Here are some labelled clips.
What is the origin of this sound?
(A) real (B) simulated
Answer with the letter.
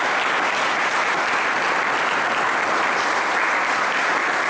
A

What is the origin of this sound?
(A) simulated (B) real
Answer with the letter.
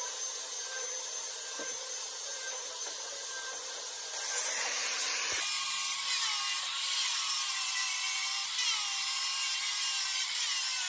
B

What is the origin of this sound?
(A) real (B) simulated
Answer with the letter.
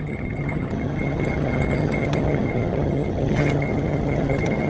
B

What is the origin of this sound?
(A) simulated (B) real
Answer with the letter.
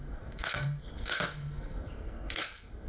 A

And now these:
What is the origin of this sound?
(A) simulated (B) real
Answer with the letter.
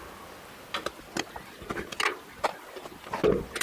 B